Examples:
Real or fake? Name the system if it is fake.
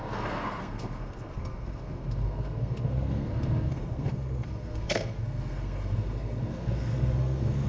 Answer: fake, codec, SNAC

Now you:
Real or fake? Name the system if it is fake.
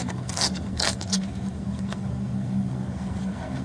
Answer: fake, codec, SNAC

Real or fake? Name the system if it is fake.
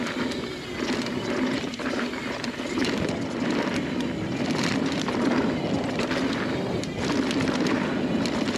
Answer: real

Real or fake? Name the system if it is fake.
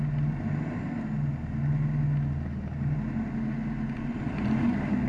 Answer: real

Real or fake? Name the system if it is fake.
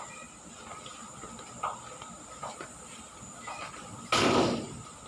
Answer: real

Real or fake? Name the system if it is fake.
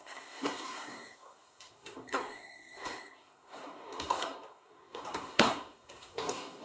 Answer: fake, codec, SNAC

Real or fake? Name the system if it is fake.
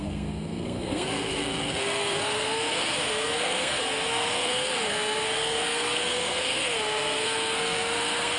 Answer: fake, codec, SNAC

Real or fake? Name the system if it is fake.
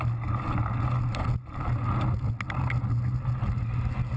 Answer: real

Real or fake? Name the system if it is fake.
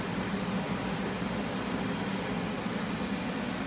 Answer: real